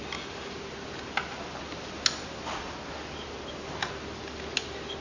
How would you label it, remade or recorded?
recorded